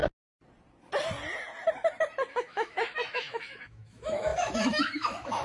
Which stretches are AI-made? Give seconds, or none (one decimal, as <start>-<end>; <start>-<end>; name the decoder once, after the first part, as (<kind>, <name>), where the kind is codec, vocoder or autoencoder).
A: 2.3-5.4 (autoencoder, DAC-VAE)